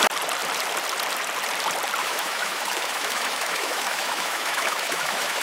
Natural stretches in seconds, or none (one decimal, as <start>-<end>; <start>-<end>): 0.0-2.0